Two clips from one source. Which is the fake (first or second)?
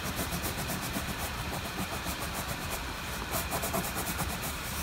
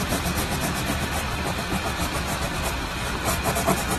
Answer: first